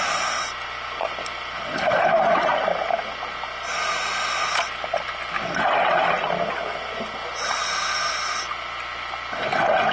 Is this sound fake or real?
real